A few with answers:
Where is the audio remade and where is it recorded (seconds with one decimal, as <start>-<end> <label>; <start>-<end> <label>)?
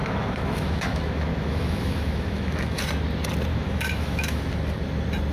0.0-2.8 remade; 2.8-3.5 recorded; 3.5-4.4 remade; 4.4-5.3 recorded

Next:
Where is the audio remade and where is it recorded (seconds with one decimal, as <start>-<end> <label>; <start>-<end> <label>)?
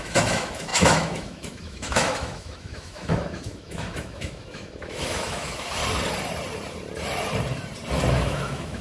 0.0-5.8 remade; 5.8-8.1 recorded; 8.1-8.8 remade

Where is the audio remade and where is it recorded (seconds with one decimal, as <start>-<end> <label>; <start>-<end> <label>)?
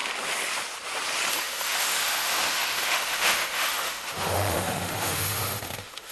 0.0-1.3 recorded; 1.3-6.1 remade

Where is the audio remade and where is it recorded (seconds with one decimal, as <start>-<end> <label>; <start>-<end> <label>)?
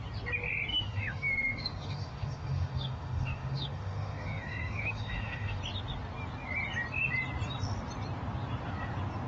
0.0-0.7 recorded; 0.7-5.6 remade; 5.6-9.3 recorded